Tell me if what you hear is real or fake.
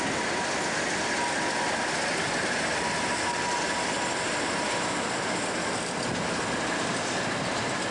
real